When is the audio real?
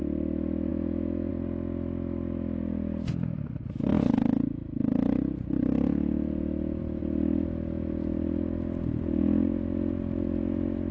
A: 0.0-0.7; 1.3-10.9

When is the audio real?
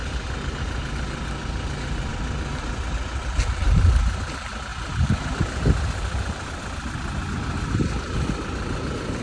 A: 0.0-9.2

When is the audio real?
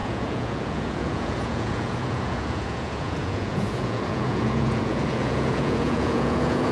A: none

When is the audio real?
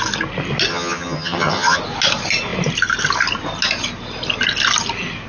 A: 0.0-0.7; 1.8-5.3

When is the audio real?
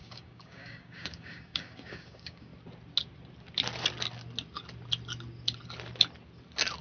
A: 2.5-6.8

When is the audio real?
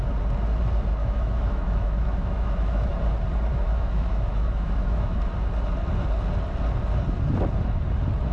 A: 0.0-1.0; 2.9-3.5; 5.2-8.3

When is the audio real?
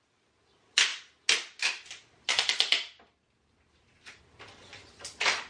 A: 0.9-4.2